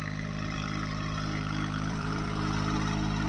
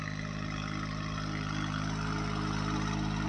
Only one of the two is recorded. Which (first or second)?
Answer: second